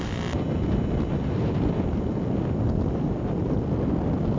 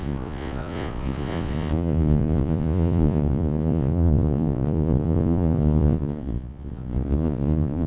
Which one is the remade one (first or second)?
second